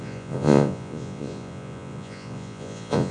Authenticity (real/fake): fake